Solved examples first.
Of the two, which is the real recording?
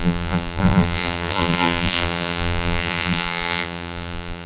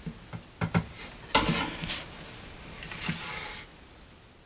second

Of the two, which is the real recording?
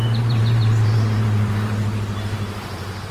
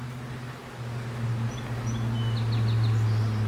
second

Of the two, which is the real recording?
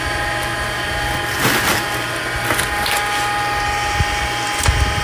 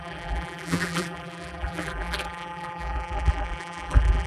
first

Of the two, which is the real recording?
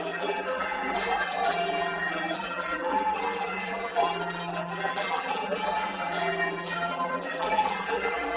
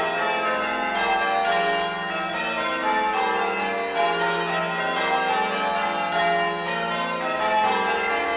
second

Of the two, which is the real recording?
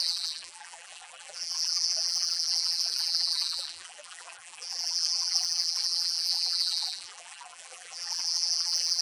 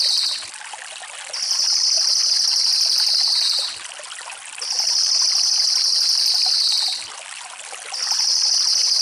second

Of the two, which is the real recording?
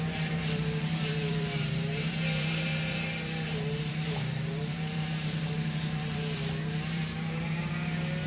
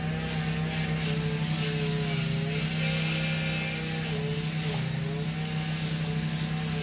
second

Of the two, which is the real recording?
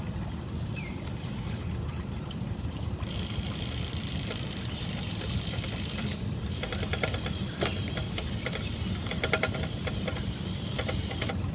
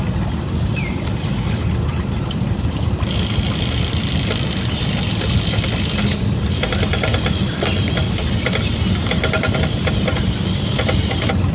second